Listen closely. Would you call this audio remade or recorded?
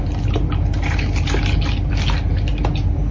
recorded